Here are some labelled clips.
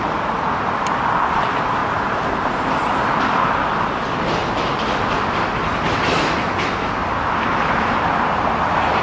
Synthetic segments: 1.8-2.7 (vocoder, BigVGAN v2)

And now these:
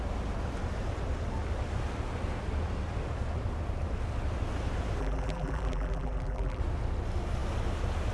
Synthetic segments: 5.0-6.6 (vocoder, BigVGAN v2)

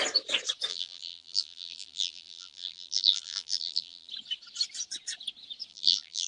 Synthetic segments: 0.7-4.1 (vocoder, BigVGAN v2); 5.7-6.3

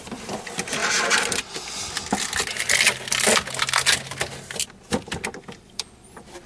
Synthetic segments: 0.0-0.8 (vocoder, BigVGAN v2); 4.7-6.5